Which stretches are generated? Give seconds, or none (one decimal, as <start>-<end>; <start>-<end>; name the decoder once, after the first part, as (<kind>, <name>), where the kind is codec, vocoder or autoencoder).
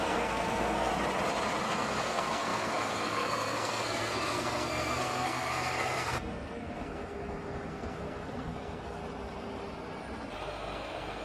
0.0-0.9 (codec, SNAC); 1.7-9.0; 10.4-11.2